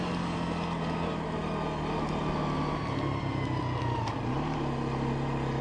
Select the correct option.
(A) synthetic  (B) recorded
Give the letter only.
B